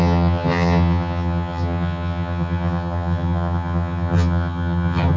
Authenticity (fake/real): fake